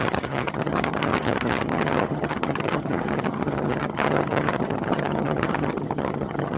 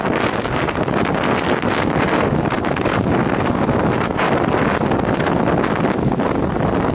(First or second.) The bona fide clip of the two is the second